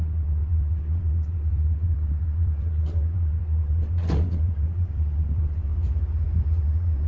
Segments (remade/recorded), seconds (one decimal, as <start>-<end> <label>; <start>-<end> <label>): 0.0-5.7 remade; 5.7-6.6 recorded; 6.6-7.1 remade